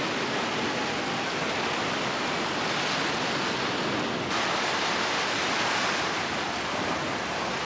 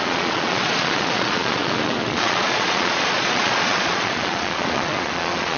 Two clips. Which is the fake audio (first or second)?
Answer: second